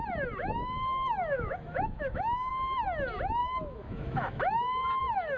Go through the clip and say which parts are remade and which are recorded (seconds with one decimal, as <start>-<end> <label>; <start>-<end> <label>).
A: 0.0-0.4 recorded; 0.4-2.5 remade; 2.5-3.4 recorded; 3.4-5.0 remade; 5.0-5.4 recorded